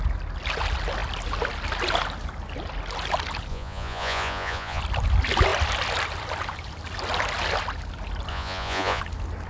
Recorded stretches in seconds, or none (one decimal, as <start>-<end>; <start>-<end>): 0.0-3.5; 4.8-8.3; 9.0-9.5